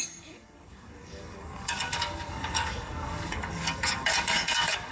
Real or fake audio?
fake